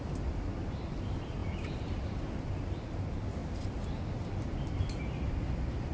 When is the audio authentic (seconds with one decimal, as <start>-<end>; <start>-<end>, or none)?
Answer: 1.4-2.4; 3.4-5.4